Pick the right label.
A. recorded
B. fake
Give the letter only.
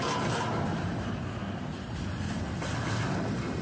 A